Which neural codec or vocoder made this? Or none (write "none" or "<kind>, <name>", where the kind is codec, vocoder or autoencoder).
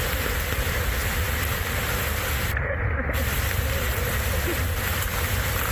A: none